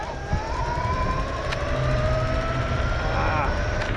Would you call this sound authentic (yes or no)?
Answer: yes